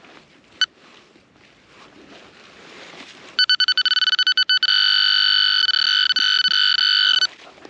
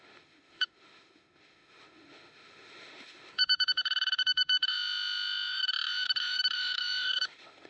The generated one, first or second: second